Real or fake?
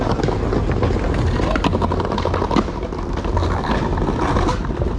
real